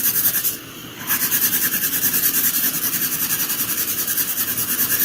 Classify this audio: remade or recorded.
recorded